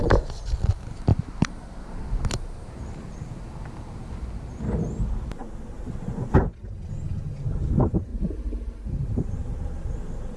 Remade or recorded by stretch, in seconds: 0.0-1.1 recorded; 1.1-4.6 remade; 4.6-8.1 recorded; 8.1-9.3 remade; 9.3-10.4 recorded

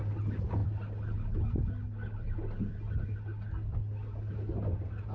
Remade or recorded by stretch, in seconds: 0.0-5.1 recorded

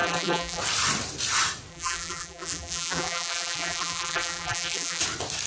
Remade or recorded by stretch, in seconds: 0.0-0.6 remade; 0.6-1.7 recorded; 1.7-5.0 remade; 5.0-5.5 recorded

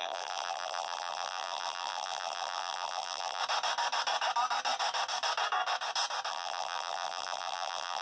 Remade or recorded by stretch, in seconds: 0.0-3.4 remade; 3.4-6.3 recorded; 6.3-8.0 remade

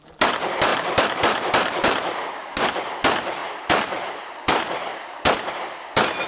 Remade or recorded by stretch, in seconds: 0.0-0.7 recorded; 0.7-2.7 remade; 2.7-3.4 recorded; 3.4-5.5 remade; 5.5-6.3 recorded

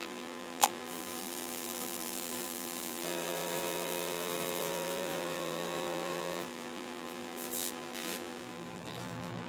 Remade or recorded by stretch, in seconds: 0.0-9.5 remade